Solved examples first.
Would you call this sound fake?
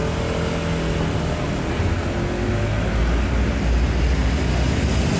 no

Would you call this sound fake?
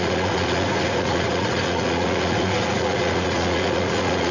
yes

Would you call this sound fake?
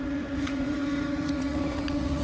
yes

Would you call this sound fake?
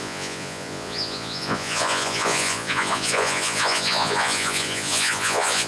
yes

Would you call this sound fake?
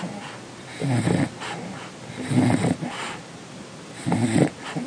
no